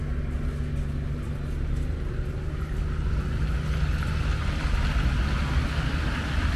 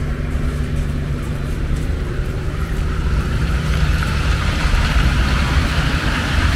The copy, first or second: second